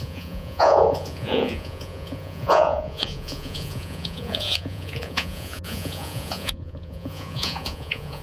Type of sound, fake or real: fake